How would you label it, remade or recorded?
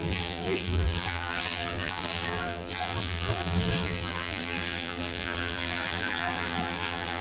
remade